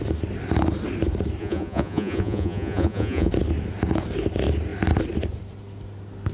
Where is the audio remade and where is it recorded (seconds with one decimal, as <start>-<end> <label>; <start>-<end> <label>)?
0.0-1.4 recorded; 1.4-3.3 remade; 3.3-6.3 recorded

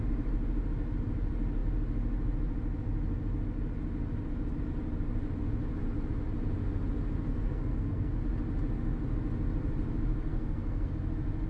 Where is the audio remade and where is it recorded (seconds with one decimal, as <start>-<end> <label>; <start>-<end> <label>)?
0.0-7.3 recorded; 7.3-8.2 remade; 8.2-10.3 recorded; 10.3-10.9 remade; 10.9-11.5 recorded

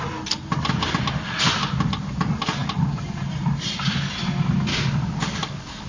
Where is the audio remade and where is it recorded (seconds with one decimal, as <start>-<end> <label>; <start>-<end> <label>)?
0.0-4.7 recorded; 4.7-5.9 remade